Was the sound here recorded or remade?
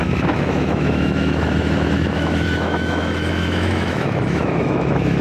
remade